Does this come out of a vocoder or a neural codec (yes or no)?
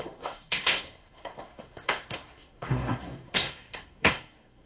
yes